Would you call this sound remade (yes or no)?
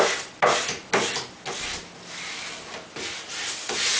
no